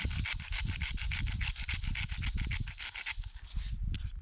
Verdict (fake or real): real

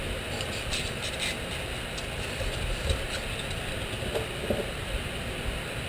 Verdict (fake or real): real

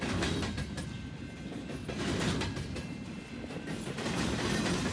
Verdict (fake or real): real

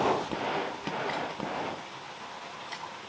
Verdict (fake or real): real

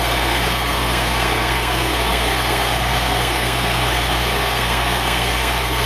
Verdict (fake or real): fake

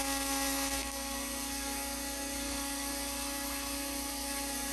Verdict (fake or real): fake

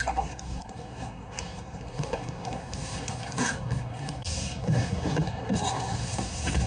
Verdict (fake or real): fake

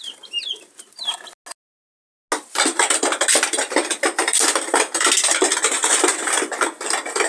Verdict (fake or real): real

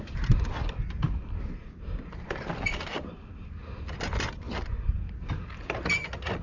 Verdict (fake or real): real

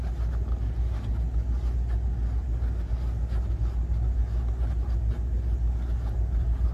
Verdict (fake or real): real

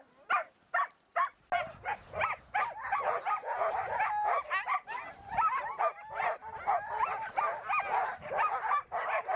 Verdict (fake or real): real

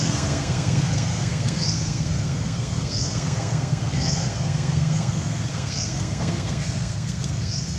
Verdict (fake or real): fake